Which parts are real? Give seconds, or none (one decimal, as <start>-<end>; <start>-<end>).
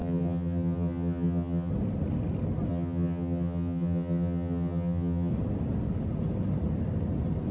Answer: 1.7-2.7; 5.3-7.5